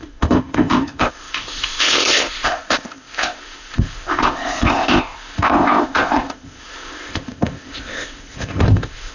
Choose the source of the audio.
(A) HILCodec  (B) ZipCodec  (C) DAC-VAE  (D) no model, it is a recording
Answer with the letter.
B